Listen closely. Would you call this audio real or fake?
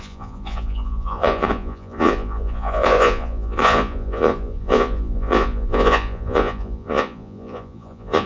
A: fake